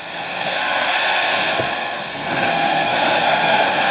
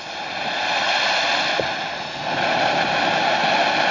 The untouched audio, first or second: second